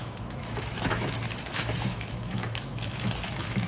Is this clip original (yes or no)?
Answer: no